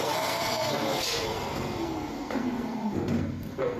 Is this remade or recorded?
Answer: remade